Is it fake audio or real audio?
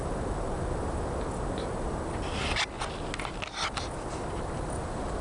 real